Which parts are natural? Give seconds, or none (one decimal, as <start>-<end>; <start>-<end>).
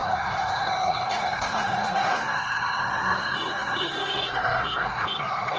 none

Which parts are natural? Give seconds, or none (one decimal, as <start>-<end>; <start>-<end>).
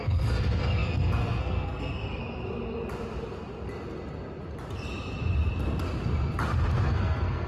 2.2-6.7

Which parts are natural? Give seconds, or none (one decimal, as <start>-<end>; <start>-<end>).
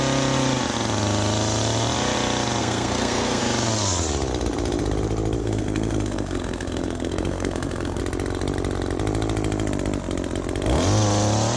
0.0-2.6; 3.4-5.4; 8.0-11.6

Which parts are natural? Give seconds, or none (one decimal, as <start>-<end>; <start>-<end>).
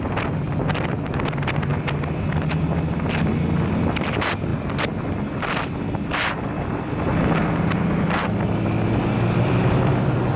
0.0-10.4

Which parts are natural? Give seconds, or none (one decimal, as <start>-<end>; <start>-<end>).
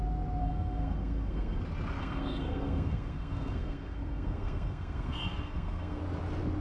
0.0-0.4; 1.6-2.0; 6.0-6.6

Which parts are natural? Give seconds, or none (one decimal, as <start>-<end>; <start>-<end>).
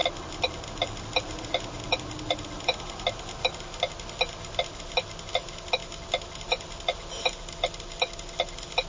0.0-8.9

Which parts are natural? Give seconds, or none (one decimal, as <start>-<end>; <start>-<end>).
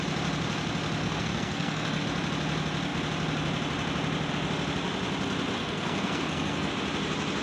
0.0-1.0; 2.0-5.6; 6.7-7.4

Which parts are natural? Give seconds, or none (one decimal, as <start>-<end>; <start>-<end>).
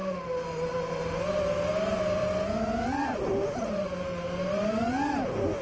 0.0-5.6